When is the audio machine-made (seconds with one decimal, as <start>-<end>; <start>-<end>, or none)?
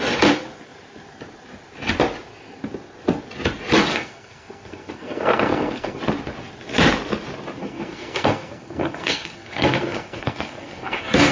3.9-6.0; 7.6-11.3